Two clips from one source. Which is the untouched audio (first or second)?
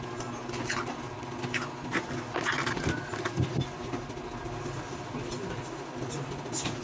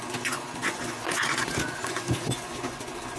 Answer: first